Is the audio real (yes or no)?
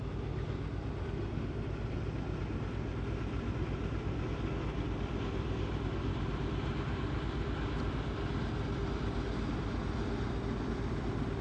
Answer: yes